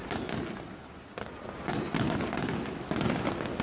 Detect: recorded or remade recorded